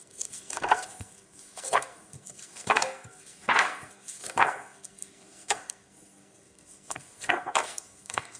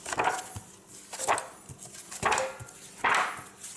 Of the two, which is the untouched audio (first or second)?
second